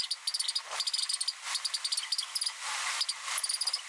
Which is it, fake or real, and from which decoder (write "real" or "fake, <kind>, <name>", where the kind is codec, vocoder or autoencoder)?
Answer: real